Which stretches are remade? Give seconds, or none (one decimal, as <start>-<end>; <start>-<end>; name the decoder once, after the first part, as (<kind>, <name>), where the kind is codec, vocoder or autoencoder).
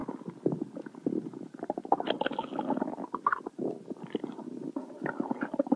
none